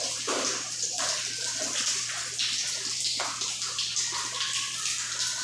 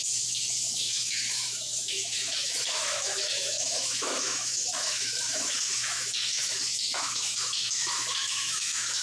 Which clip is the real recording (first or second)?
first